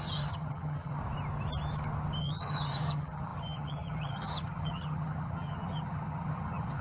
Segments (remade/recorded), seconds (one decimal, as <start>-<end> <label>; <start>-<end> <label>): 0.0-1.0 remade; 1.0-2.2 recorded; 2.2-6.8 remade